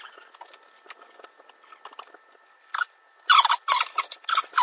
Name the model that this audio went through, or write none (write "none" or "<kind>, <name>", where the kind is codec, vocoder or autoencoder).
none